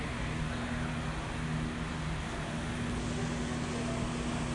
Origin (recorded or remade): recorded